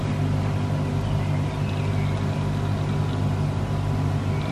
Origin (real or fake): real